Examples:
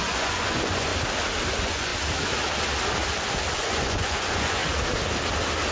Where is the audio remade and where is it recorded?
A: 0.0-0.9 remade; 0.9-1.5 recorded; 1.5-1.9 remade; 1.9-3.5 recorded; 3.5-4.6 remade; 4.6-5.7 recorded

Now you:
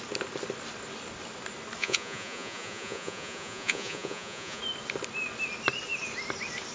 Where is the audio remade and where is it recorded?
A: 0.0-1.8 recorded; 1.8-4.6 remade; 4.6-6.7 recorded

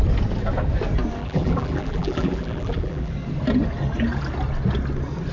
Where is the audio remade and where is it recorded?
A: 0.0-1.2 recorded; 1.2-3.1 remade; 3.1-5.3 recorded